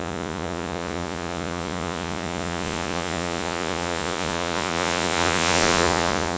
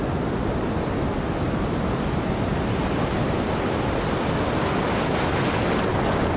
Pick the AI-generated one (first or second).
first